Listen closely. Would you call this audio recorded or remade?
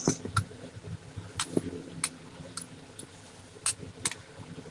recorded